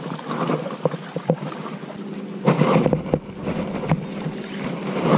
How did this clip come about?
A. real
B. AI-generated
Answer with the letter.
A